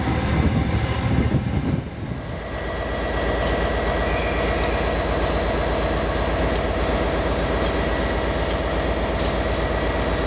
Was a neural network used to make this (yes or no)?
no